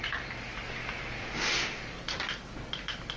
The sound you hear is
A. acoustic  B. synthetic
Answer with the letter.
A